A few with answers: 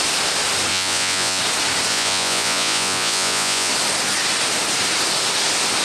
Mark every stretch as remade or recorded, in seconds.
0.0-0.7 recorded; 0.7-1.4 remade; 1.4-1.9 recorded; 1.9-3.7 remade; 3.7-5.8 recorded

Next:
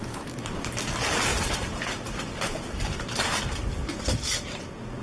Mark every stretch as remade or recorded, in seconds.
0.0-1.3 recorded; 1.3-3.4 remade; 3.4-5.0 recorded

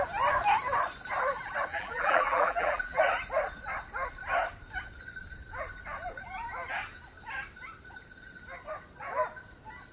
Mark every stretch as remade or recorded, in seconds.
0.0-1.7 recorded; 1.7-3.0 remade; 3.0-9.9 recorded

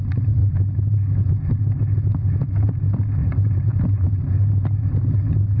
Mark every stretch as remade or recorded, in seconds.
0.0-3.2 recorded; 3.2-4.3 remade; 4.3-5.6 recorded

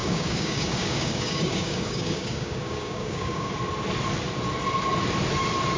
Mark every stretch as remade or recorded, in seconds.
0.0-3.5 remade; 3.5-5.8 recorded